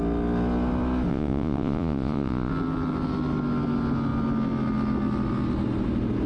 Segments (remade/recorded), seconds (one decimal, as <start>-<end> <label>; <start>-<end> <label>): 0.0-1.1 recorded; 1.1-2.5 remade; 2.5-6.3 recorded